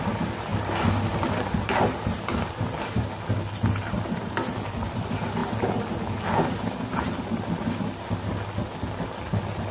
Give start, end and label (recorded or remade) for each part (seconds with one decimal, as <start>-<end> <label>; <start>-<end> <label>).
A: 0.0-9.7 recorded